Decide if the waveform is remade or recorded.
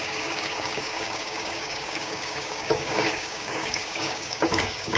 remade